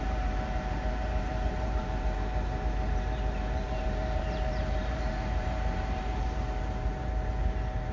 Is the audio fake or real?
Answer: fake